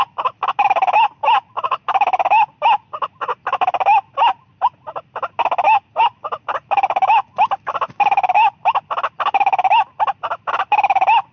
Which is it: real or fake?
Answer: real